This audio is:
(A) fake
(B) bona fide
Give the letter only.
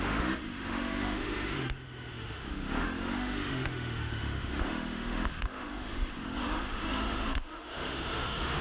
A